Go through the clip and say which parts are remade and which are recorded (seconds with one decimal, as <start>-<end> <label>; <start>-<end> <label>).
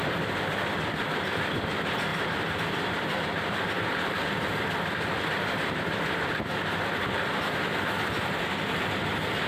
0.0-2.1 recorded; 2.1-4.2 remade; 4.2-9.5 recorded